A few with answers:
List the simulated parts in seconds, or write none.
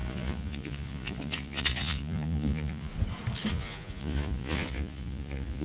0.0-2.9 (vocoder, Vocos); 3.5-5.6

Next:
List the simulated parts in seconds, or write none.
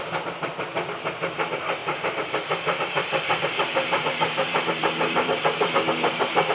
1.8-5.7 (vocoder, BigVGAN v2)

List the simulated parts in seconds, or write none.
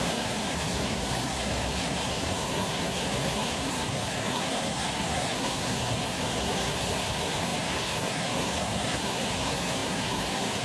0.0-10.6 (codec, SNAC)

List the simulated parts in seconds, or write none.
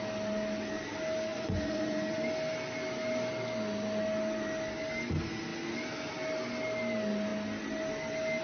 1.3-2.2 (vocoder, Vocos)